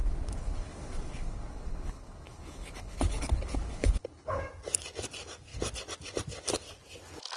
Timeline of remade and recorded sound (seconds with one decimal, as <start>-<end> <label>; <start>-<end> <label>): 0.0-4.4 remade; 4.4-7.4 recorded